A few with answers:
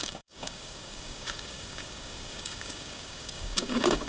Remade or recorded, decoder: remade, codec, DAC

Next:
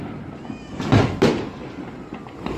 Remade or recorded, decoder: recorded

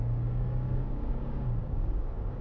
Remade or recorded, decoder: remade, codec, DAC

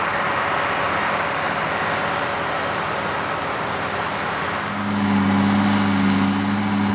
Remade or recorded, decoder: recorded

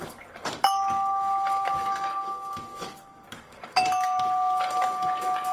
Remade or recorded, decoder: remade, codec, DAC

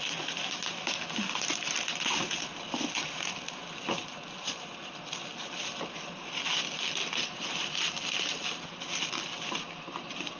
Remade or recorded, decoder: recorded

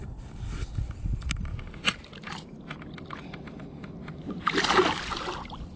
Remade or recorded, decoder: recorded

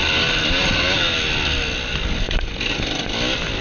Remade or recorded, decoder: recorded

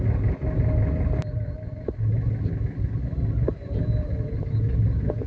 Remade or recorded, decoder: recorded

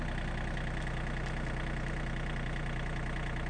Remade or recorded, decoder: recorded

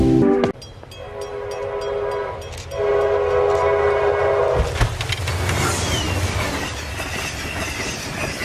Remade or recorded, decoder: recorded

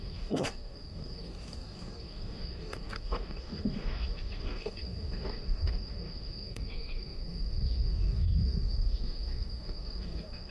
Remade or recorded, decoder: remade, codec, DAC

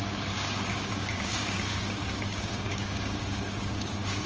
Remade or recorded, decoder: remade, codec, DAC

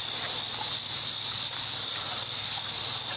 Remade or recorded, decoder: recorded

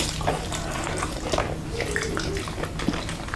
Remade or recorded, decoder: recorded